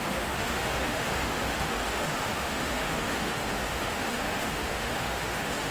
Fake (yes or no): yes